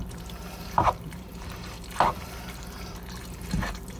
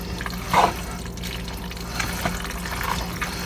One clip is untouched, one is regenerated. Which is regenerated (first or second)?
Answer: first